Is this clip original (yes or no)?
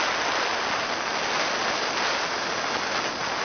yes